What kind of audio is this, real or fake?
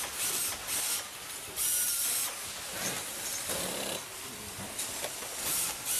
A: real